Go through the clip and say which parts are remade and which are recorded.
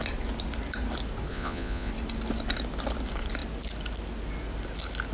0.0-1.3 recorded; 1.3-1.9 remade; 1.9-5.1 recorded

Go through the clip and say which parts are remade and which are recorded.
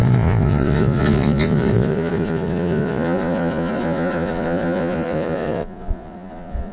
0.0-6.7 remade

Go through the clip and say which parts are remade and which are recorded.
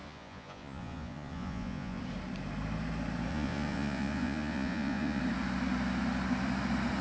0.0-2.0 remade; 2.0-3.3 recorded; 3.3-5.2 remade; 5.2-7.0 recorded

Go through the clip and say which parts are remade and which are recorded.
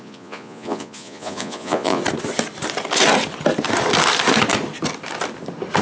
0.0-2.0 remade; 2.0-5.8 recorded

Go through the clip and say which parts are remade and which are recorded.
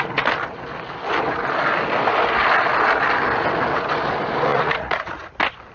0.0-4.5 recorded; 4.5-5.3 remade; 5.3-5.7 recorded